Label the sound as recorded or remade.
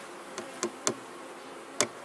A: recorded